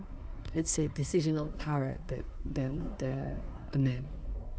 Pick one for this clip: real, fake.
fake